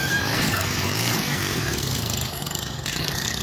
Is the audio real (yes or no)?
no